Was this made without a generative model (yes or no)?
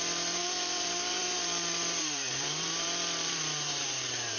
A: no